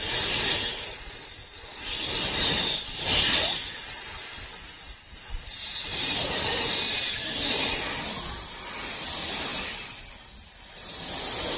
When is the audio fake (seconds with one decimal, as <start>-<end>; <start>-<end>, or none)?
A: 5.5-6.5